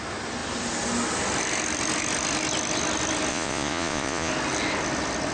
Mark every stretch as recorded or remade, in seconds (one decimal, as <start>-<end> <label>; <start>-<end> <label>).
0.0-3.3 recorded; 3.3-4.3 remade; 4.3-5.3 recorded